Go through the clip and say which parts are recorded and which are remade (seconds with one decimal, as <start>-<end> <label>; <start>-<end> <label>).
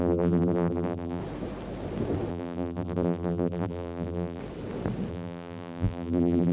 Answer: 0.0-1.2 remade; 1.2-2.3 recorded; 2.3-4.4 remade; 4.4-5.1 recorded; 5.1-6.5 remade